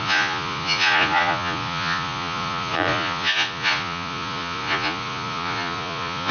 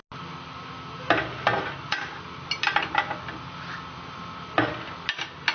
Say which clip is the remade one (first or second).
first